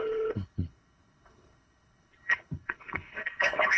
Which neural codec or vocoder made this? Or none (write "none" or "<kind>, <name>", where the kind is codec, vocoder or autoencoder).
codec, HILCodec